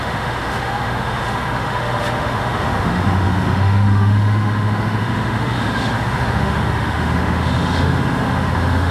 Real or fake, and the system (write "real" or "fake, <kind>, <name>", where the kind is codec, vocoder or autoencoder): fake, autoencoder, DAC-VAE